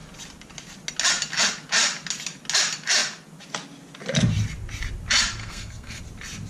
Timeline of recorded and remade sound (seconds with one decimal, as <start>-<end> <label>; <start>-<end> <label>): 0.0-5.4 recorded; 5.4-6.0 remade; 6.0-6.5 recorded

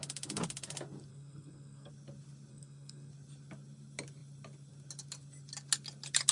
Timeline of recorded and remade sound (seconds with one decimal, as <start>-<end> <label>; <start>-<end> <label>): 0.0-1.1 recorded; 1.1-1.9 remade; 1.9-2.5 recorded; 2.5-3.1 remade; 3.1-6.3 recorded

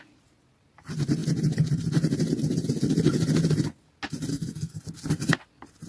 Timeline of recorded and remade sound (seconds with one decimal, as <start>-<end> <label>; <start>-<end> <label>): 0.0-4.3 recorded; 4.3-4.8 remade; 4.8-5.9 recorded

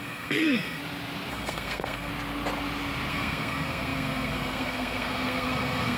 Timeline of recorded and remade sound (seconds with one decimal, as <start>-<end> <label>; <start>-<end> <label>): 0.0-0.8 remade; 0.8-1.3 recorded; 1.3-2.1 remade; 2.1-3.1 recorded; 3.1-6.0 remade

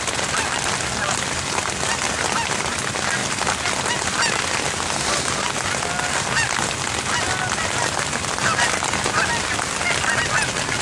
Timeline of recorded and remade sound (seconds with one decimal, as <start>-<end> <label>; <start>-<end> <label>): 0.0-10.8 recorded